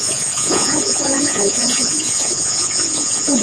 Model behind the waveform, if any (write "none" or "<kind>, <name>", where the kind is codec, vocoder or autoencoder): vocoder, Vocos